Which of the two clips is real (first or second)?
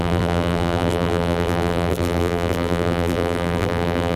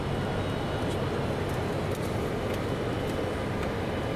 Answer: second